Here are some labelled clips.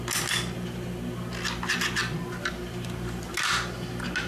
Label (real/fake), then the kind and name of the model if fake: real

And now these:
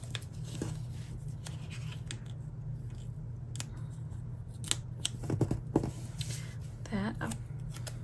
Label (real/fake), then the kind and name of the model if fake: real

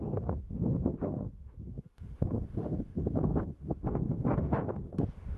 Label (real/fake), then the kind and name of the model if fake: fake, autoencoder, DAC-VAE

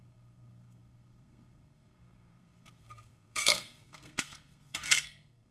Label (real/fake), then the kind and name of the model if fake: fake, codec, SNAC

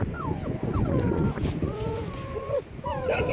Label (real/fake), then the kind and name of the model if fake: fake, vocoder, Vocos